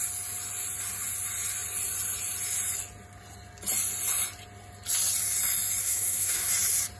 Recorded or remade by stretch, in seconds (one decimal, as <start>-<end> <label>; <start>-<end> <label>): 0.0-5.8 recorded; 5.8-6.5 remade; 6.5-7.0 recorded

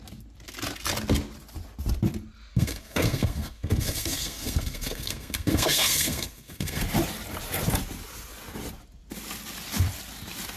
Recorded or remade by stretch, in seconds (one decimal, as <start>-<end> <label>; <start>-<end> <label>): 0.0-2.5 recorded; 2.5-6.8 remade; 6.8-10.6 recorded

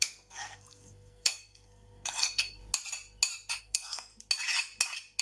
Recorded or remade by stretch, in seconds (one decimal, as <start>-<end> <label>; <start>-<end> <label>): 0.0-2.6 remade; 2.6-3.6 recorded; 3.6-4.1 remade; 4.1-5.2 recorded

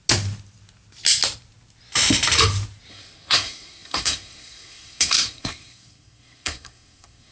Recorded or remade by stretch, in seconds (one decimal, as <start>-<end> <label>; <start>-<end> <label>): 0.0-2.9 recorded; 2.9-7.3 remade

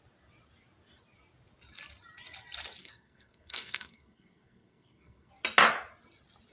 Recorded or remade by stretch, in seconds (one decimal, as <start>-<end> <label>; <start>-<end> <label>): 0.0-2.8 recorded; 2.8-5.3 remade; 5.3-6.5 recorded

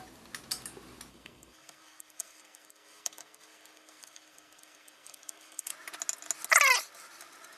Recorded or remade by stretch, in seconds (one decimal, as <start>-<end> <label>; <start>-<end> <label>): 0.0-1.1 recorded; 1.1-5.7 remade; 5.7-7.6 recorded

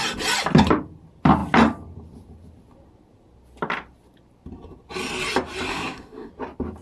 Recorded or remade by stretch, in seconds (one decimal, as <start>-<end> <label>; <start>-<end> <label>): 0.0-5.7 recorded; 5.7-6.3 remade; 6.3-6.8 recorded